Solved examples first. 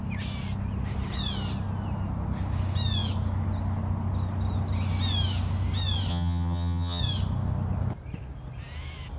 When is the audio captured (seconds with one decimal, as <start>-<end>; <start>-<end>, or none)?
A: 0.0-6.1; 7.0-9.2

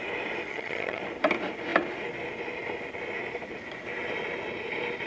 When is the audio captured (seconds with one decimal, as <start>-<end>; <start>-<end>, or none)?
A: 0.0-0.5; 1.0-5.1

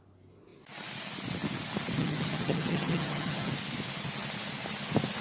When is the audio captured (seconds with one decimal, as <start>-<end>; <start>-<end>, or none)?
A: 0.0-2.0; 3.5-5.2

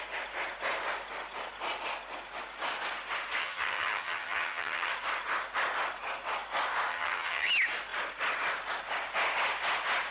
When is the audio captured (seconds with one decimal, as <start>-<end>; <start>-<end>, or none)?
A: 0.0-3.4; 4.9-6.9; 7.5-10.1